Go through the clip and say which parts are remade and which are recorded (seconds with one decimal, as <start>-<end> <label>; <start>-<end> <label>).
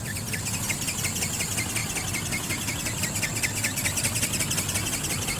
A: 0.0-5.4 recorded